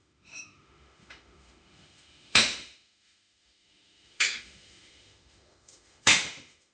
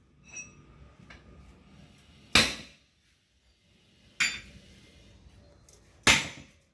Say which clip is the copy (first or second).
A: first